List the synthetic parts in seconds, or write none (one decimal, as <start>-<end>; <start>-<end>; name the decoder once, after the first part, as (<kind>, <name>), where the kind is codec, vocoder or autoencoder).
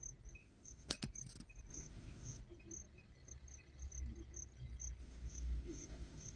0.4-0.9 (autoencoder, DAC-VAE); 1.7-2.4; 5.0-6.4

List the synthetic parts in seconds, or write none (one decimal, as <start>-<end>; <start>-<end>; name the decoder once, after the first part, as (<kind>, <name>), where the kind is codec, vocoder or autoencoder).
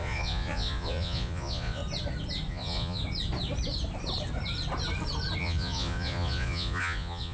0.0-1.8 (vocoder, Vocos); 2.5-3.0; 5.4-7.3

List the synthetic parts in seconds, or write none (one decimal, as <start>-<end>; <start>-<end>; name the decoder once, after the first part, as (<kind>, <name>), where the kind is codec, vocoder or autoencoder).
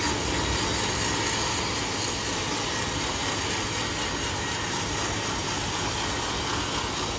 none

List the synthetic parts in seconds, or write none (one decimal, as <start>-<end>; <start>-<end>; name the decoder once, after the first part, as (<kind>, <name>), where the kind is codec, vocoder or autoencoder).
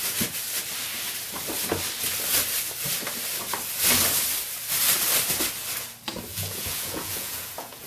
6.3-7.9 (vocoder, Vocos)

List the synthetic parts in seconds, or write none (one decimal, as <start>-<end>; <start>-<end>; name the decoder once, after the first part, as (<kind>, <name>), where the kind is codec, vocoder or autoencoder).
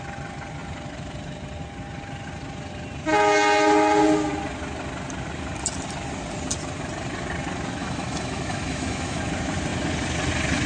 7.8-9.2 (autoencoder, DAC-VAE)